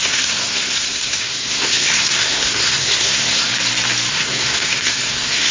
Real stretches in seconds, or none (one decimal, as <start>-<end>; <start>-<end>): 3.5-4.1